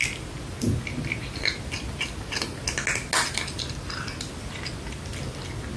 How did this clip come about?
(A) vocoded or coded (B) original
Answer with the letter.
B